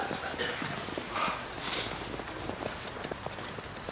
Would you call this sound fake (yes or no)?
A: no